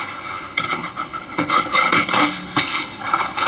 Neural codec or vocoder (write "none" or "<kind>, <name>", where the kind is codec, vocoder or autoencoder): codec, HILCodec